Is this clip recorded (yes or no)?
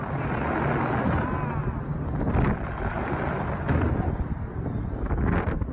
yes